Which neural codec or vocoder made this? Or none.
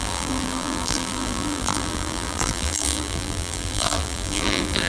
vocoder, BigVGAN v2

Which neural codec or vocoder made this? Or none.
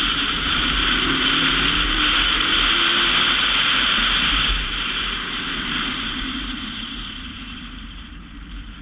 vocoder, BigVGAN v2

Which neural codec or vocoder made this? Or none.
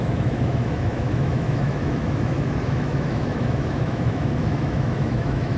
autoencoder, DAC-VAE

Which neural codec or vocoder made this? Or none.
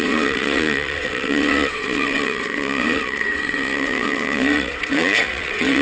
vocoder, WaveNeXt